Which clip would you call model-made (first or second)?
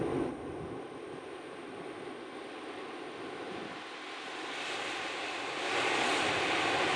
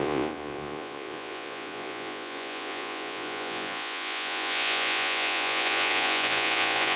second